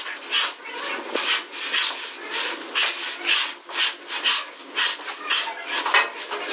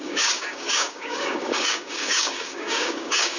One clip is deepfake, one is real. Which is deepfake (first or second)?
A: second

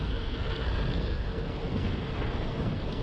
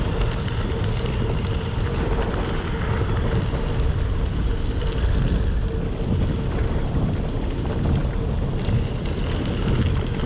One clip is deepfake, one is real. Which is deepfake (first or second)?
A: first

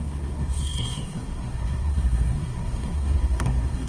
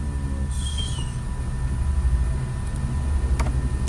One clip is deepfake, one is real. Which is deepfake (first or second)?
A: first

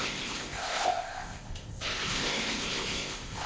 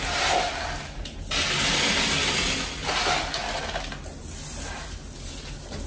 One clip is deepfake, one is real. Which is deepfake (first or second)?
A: first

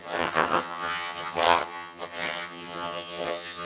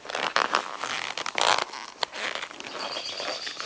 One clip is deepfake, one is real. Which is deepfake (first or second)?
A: first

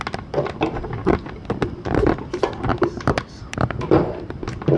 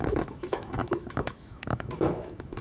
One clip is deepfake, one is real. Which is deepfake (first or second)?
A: second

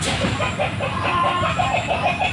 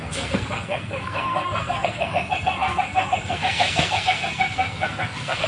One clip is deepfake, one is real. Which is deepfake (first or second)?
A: second